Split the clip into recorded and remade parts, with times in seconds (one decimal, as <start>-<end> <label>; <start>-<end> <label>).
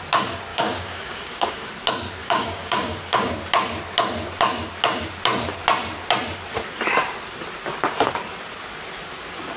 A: 0.0-0.5 recorded; 0.5-1.7 remade; 1.7-2.2 recorded; 2.2-3.3 remade; 3.3-9.6 recorded